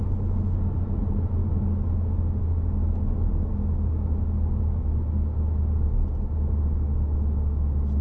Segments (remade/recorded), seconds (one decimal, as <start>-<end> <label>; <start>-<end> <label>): 0.0-8.0 recorded